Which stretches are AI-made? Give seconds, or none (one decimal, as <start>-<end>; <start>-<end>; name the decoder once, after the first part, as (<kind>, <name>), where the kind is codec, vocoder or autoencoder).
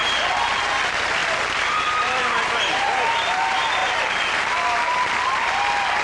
0.6-6.0 (vocoder, BigVGAN v2)